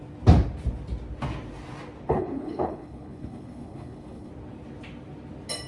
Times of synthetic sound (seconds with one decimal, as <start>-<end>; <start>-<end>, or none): 2.1-4.3